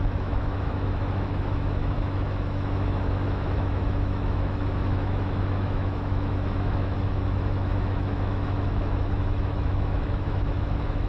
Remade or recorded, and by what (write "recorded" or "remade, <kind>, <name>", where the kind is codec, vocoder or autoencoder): remade, autoencoder, DAC-VAE